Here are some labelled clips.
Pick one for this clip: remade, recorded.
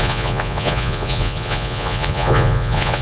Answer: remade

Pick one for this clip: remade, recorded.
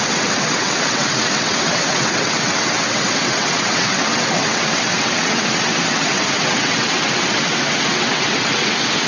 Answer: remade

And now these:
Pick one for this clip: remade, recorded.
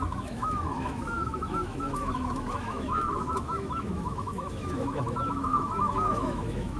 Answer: remade